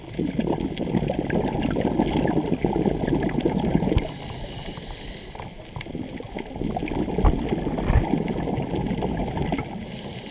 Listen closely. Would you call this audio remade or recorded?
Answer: recorded